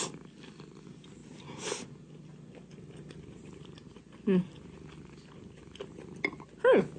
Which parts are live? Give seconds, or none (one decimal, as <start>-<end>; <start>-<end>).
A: 0.0-7.0